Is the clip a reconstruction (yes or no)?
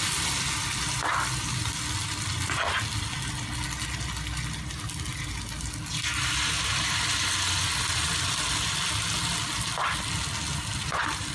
no